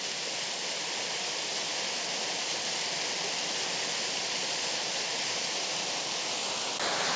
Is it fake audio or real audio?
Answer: real